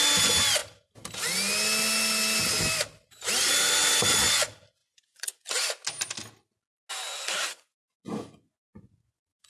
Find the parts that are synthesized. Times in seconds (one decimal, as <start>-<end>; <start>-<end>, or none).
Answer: 4.8-5.4; 7.5-9.5